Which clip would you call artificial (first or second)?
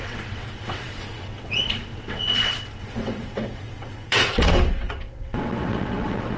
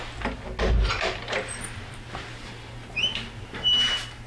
first